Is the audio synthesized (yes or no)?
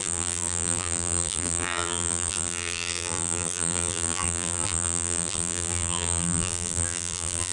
yes